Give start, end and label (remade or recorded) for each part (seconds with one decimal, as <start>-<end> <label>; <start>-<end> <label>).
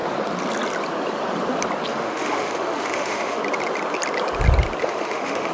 0.0-1.9 recorded; 1.9-3.4 remade; 3.4-4.8 recorded; 4.8-5.5 remade